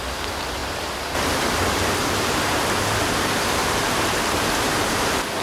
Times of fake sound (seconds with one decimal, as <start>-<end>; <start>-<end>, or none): 0.6-1.4; 3.6-5.4